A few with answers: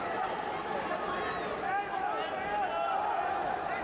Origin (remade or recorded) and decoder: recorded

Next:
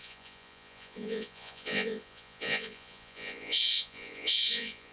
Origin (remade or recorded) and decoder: remade, vocoder, Vocos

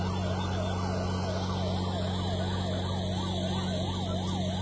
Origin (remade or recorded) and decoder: recorded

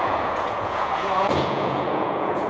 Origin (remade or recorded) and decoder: remade, vocoder, Vocos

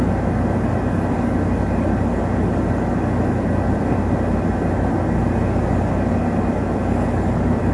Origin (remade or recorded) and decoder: recorded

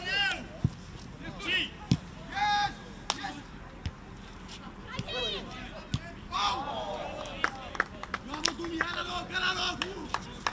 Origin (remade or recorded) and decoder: recorded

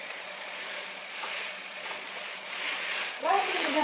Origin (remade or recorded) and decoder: remade, vocoder, Vocos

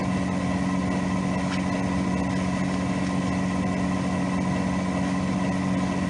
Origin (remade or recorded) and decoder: recorded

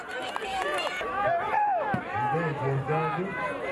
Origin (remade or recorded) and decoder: recorded